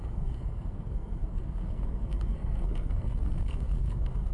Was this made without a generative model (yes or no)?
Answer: no